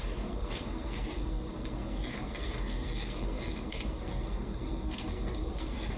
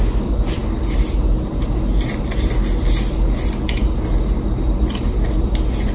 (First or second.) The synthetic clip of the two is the first